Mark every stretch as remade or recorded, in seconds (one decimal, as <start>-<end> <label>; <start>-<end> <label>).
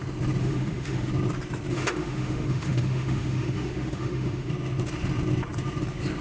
0.0-0.4 recorded; 0.4-1.1 remade; 1.1-1.7 recorded; 1.7-4.5 remade; 4.5-6.2 recorded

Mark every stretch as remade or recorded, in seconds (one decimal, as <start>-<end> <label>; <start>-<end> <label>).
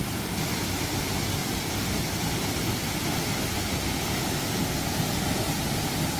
0.0-1.4 recorded; 1.4-4.2 remade; 4.2-6.2 recorded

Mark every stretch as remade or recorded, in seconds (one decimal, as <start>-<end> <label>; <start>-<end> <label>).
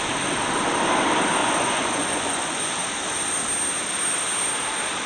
0.0-1.4 recorded; 1.4-2.7 remade; 2.7-5.1 recorded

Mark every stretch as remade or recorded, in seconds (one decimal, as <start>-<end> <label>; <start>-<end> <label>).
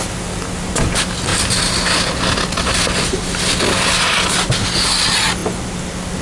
0.0-6.2 recorded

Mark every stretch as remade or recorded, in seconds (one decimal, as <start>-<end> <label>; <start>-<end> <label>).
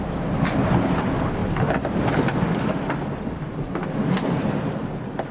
0.0-5.3 recorded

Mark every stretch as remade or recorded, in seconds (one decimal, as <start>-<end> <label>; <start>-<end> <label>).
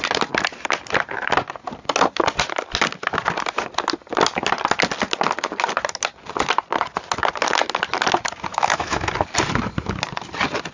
0.0-8.5 recorded; 8.5-9.1 remade; 9.1-10.7 recorded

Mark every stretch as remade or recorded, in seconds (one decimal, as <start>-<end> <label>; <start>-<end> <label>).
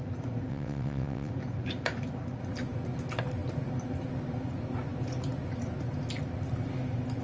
0.0-0.5 recorded; 0.5-1.3 remade; 1.3-7.2 recorded